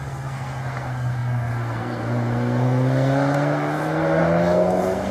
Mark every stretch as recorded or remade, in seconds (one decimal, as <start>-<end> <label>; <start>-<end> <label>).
0.0-5.1 remade

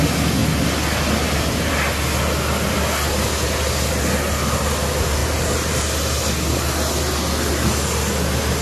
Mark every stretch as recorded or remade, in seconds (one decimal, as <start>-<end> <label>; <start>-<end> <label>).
0.0-5.2 recorded; 5.2-5.8 remade; 5.8-8.6 recorded